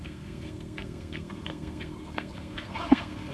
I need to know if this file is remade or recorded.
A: remade